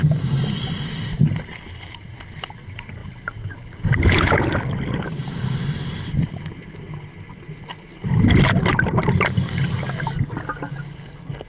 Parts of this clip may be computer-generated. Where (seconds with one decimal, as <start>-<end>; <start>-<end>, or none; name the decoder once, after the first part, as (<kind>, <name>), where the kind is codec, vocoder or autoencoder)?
none